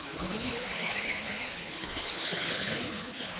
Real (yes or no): no